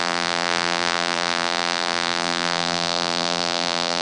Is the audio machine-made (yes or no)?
yes